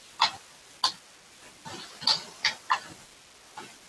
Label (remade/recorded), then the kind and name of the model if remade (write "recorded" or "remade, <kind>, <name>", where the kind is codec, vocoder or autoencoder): recorded